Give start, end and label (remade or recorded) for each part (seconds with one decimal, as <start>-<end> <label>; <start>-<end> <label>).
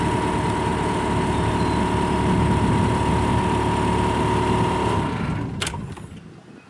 0.0-6.7 recorded